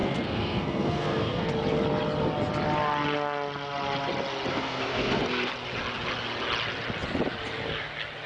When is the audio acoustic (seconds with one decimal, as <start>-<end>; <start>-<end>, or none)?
1.5-4.5; 5.5-8.3